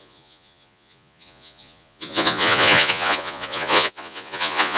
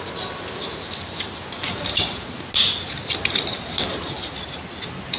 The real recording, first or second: second